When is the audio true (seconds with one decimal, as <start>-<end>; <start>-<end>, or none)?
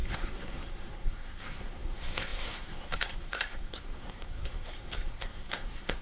none